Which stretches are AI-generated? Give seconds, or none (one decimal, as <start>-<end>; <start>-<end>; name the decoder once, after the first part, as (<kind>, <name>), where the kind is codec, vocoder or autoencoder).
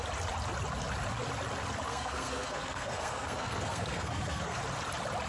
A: 1.9-4.6 (codec, SNAC)